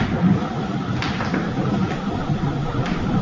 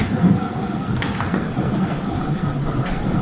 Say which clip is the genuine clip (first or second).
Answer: first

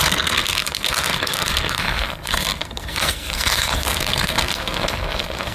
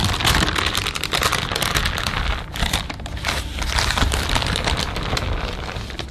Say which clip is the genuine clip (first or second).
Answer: second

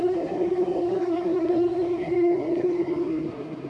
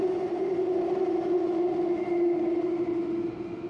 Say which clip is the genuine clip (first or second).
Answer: second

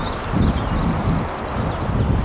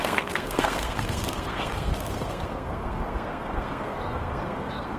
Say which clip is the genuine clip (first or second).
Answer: first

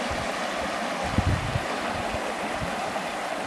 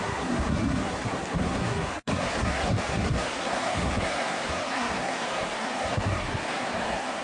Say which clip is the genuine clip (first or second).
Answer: first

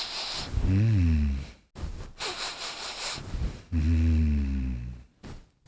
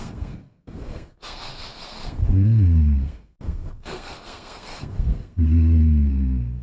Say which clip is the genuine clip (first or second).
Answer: first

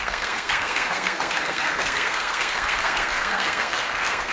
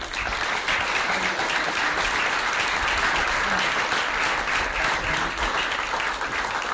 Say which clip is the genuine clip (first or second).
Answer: second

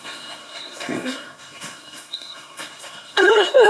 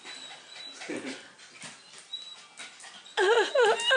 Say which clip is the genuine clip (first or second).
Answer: second